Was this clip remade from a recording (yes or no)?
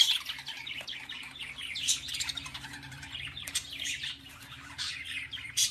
yes